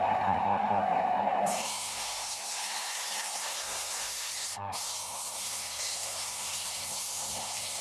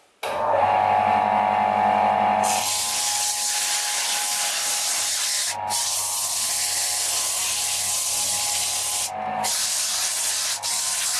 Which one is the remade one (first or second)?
first